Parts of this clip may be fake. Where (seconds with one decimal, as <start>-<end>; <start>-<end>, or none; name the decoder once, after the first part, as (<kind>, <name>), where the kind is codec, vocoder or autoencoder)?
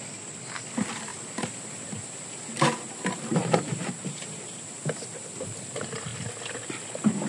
1.1-4.6 (vocoder, BigVGAN v2)